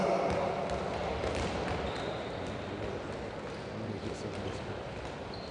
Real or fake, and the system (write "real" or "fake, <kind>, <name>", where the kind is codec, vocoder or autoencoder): real